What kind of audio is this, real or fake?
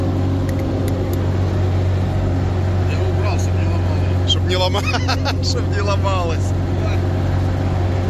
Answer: real